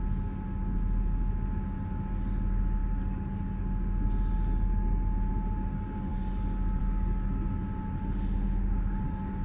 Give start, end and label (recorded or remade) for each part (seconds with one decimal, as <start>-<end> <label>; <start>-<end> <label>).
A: 0.0-8.0 recorded; 8.0-9.0 remade; 9.0-9.4 recorded